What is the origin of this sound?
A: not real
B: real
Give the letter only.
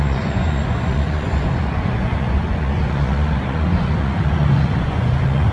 A